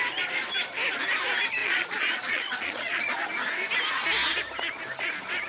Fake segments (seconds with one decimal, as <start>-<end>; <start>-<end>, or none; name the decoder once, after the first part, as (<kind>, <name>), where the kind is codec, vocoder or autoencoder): 1.6-3.1 (vocoder, Vocos)